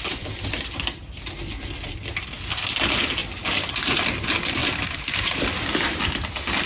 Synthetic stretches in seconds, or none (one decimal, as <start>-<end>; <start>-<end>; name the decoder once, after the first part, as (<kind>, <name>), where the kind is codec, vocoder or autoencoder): 3.2-4.0 (vocoder, BigVGAN v2); 4.6-6.0